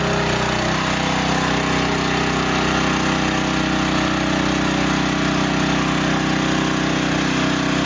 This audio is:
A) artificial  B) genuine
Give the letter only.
B